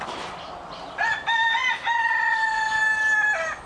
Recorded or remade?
recorded